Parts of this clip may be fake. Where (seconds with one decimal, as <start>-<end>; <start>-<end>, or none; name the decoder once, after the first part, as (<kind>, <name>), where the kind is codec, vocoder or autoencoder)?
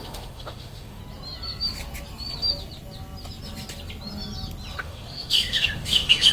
0.0-1.0 (autoencoder, DAC-VAE); 4.8-6.3